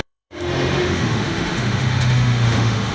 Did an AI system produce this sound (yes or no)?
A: yes